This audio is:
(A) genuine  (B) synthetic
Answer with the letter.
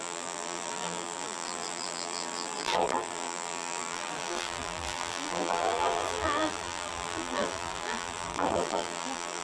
B